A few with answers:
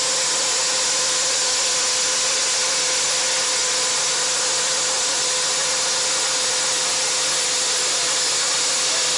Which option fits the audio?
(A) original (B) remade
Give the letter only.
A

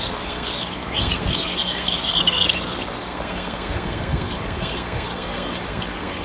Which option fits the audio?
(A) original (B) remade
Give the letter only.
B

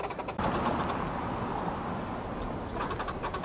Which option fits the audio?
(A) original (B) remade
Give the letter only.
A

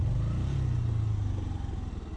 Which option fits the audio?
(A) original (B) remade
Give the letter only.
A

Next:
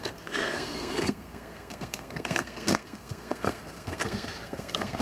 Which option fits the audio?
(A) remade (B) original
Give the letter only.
A